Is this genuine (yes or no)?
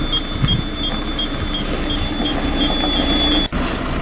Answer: yes